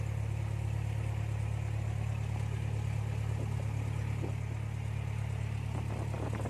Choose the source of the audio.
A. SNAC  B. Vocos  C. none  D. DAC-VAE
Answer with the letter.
C